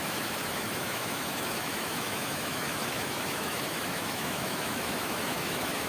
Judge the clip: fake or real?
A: fake